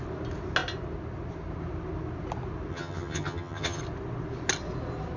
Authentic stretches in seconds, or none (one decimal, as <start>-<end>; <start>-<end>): 0.0-2.7; 3.8-5.2